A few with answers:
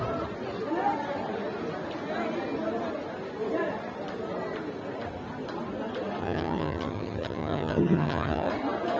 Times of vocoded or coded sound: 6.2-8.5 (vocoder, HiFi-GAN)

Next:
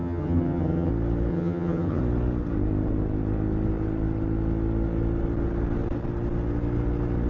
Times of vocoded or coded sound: 0.0-0.9 (vocoder, HiFi-GAN); 1.3-2.0

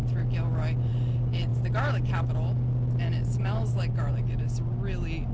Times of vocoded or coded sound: none

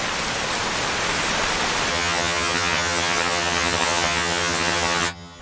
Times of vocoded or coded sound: 1.9-5.4 (vocoder, HiFi-GAN)

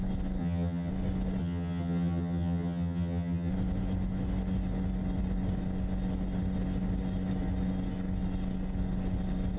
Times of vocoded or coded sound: 0.4-0.9 (vocoder, HiFi-GAN); 1.4-3.5